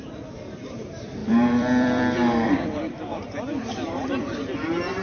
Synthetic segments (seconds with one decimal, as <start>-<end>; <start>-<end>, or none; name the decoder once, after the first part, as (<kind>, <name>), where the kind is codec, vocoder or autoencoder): 1.2-4.2 (vocoder, BigVGAN v2)